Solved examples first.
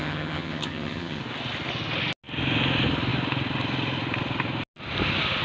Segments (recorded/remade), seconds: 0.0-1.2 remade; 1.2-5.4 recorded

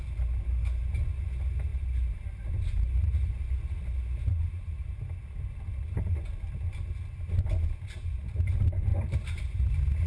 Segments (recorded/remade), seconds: 0.0-1.7 recorded; 1.7-3.3 remade; 3.3-4.3 recorded; 4.3-5.0 remade; 5.0-8.9 recorded; 8.9-9.7 remade; 9.7-10.1 recorded